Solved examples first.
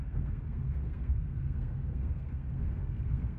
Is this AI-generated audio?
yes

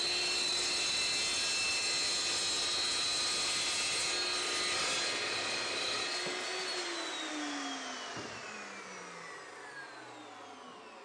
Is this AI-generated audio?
no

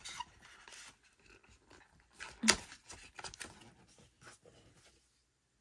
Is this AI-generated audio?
no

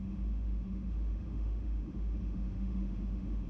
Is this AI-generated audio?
yes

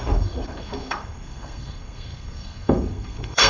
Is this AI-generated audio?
yes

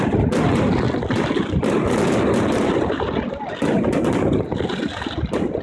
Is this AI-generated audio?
no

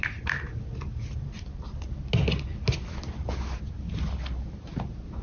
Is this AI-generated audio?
no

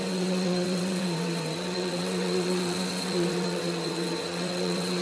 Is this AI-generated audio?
yes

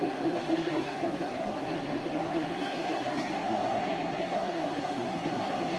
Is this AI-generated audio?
yes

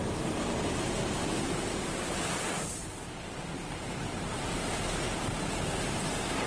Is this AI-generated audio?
yes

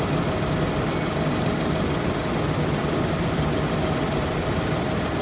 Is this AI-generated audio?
no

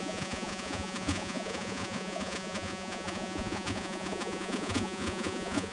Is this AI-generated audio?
yes